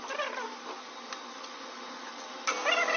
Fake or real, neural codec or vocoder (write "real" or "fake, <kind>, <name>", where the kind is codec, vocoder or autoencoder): real